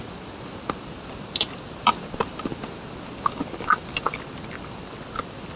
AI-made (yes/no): no